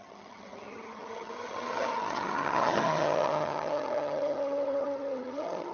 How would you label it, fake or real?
fake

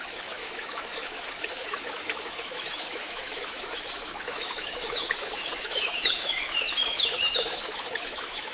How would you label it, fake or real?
fake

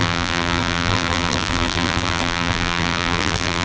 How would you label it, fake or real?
fake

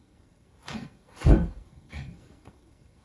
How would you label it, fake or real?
fake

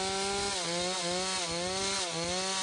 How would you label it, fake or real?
real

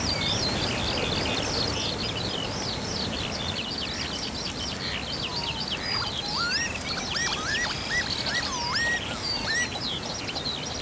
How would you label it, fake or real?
real